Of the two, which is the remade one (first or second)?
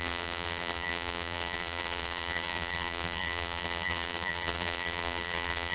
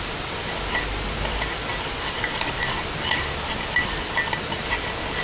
first